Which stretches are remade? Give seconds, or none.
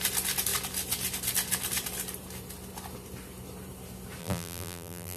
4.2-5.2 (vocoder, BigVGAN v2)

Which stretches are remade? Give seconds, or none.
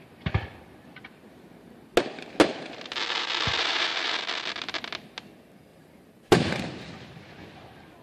5.7-6.6 (vocoder, BigVGAN v2)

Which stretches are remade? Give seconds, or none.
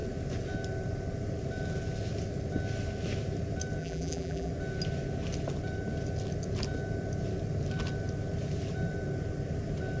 3.8-4.5 (vocoder, BigVGAN v2)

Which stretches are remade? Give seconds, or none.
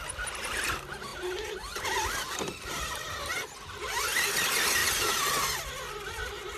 none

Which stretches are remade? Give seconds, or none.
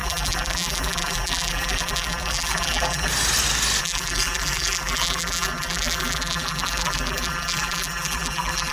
0.0-3.1 (vocoder, BigVGAN v2); 3.8-8.7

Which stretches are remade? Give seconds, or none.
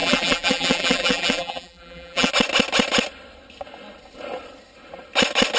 0.0-2.3 (vocoder, BigVGAN v2)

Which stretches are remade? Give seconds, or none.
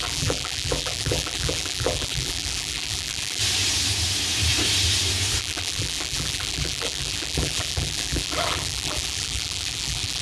0.0-3.4 (vocoder, BigVGAN v2); 5.4-10.2